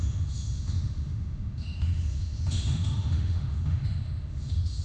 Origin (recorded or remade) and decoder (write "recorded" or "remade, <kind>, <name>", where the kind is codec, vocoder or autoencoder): remade, autoencoder, DAC-VAE